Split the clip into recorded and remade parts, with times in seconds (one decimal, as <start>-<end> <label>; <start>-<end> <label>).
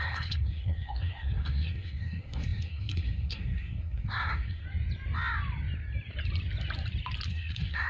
0.0-4.6 remade; 4.6-7.3 recorded; 7.3-7.9 remade